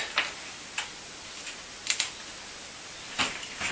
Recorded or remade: recorded